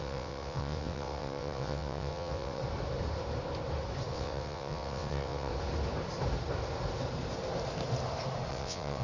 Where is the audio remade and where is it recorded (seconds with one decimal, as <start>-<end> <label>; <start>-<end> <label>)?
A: 0.0-2.6 remade; 2.6-4.1 recorded; 4.1-5.5 remade; 5.5-8.5 recorded; 8.5-9.0 remade